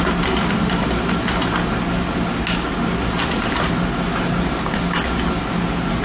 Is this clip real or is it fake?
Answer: real